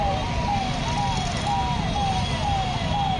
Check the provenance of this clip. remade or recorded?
recorded